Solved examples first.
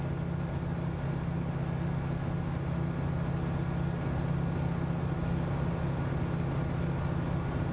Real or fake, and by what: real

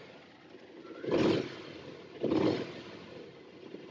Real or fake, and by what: real